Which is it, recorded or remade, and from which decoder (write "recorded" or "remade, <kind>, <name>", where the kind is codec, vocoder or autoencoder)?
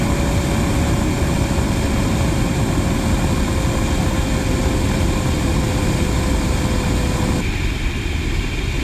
recorded